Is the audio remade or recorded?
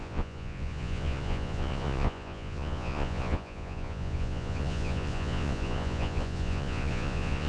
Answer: remade